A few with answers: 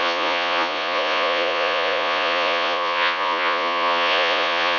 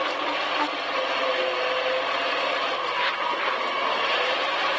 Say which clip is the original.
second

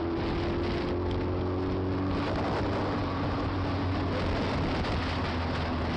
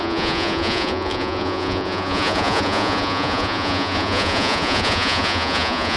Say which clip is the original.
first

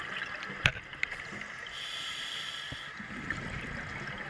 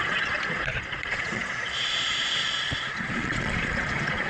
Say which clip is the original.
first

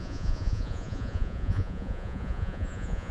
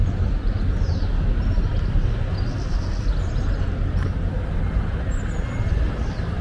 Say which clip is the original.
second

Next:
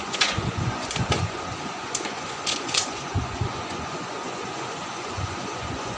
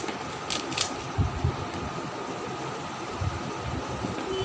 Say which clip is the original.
second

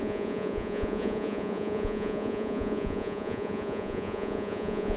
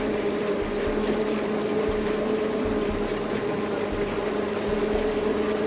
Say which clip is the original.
second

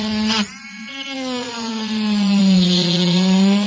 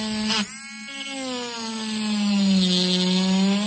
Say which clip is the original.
second